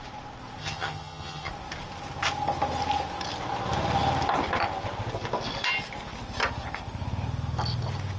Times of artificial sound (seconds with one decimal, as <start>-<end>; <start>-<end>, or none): 0.6-1.5